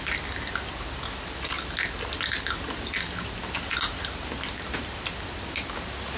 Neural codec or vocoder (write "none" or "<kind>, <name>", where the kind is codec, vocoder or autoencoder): none